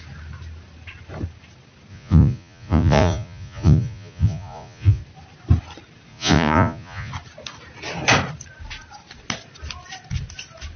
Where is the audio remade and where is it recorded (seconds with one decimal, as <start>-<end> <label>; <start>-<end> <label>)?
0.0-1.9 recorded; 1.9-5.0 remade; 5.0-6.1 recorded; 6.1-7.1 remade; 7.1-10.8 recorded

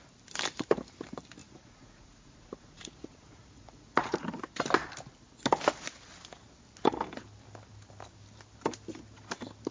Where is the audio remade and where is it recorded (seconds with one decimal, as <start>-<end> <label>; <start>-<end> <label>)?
0.0-1.4 recorded; 1.4-4.4 remade; 4.4-9.7 recorded

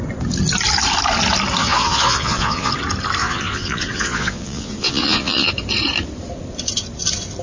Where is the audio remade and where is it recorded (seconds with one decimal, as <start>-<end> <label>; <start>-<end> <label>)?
0.0-1.6 recorded; 1.6-2.7 remade; 2.7-3.2 recorded; 3.2-5.5 remade; 5.5-7.4 recorded

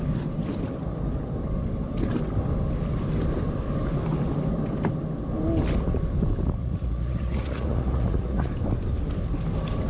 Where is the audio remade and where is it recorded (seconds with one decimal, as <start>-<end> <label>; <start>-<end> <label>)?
0.0-6.6 recorded; 6.6-8.5 remade; 8.5-9.9 recorded

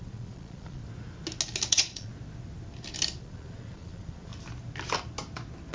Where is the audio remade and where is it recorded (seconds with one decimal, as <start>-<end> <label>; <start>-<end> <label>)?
0.0-0.8 remade; 0.8-1.7 recorded; 1.7-2.1 remade; 2.1-3.2 recorded; 3.2-4.3 remade; 4.3-5.7 recorded

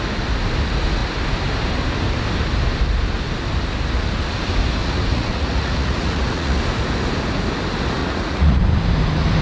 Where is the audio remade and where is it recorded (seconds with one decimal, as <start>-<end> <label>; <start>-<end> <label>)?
0.0-4.8 recorded; 4.8-6.6 remade; 6.6-8.0 recorded; 8.0-8.6 remade; 8.6-9.4 recorded